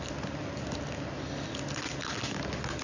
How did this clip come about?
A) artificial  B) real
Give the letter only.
B